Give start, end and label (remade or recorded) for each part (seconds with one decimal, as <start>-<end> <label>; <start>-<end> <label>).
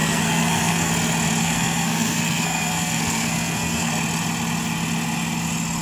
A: 0.0-0.9 remade; 0.9-1.4 recorded; 1.4-3.9 remade; 3.9-5.8 recorded